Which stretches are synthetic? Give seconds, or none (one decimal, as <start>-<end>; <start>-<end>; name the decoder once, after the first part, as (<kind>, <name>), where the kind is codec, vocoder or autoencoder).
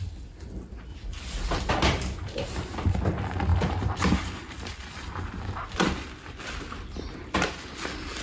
0.9-1.7 (vocoder, BigVGAN v2); 3.5-6.4